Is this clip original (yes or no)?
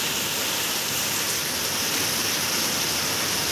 yes